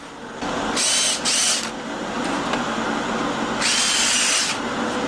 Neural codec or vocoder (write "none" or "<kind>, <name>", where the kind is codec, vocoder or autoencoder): none